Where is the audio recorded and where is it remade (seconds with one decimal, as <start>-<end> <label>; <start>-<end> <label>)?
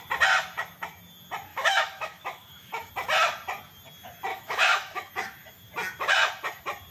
0.0-1.5 recorded; 1.5-2.9 remade; 2.9-4.3 recorded; 4.3-5.1 remade; 5.1-6.9 recorded